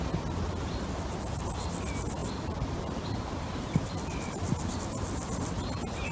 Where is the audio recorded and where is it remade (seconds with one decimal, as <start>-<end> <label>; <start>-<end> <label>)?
0.0-2.2 recorded; 2.2-4.8 remade; 4.8-6.1 recorded